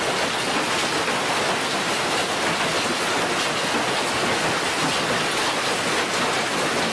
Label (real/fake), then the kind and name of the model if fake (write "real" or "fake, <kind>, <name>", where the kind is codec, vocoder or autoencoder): real